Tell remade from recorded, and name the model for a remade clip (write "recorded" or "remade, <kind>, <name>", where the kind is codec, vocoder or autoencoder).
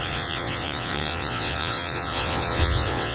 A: remade, vocoder, WaveNeXt